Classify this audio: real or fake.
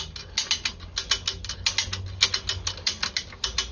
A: real